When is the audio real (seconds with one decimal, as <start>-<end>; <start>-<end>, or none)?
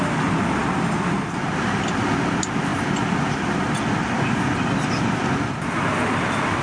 0.0-6.6